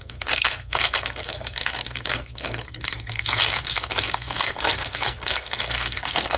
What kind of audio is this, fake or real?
fake